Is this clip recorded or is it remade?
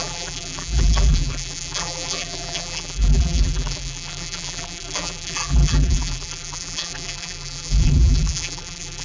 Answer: remade